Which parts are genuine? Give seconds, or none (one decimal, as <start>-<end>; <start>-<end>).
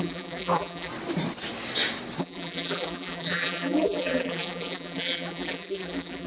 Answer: 0.9-2.2